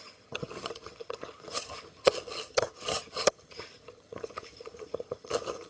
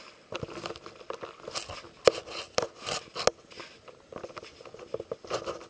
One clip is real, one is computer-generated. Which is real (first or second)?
second